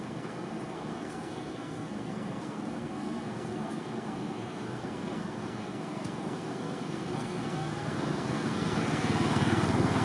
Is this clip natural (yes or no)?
no